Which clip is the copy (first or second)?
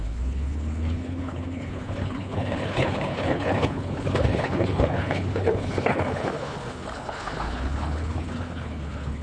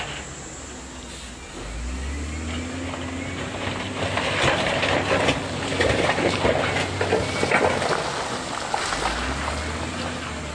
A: first